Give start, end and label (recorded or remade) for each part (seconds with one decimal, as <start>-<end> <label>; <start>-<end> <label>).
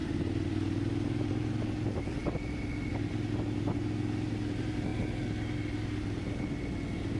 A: 0.0-7.2 recorded